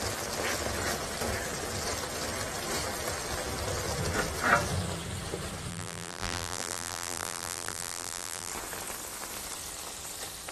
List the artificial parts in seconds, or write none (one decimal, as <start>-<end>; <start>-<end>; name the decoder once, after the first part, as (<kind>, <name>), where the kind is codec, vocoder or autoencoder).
5.7-8.5 (vocoder, BigVGAN v2)